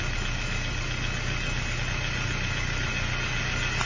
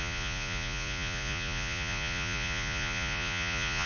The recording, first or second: first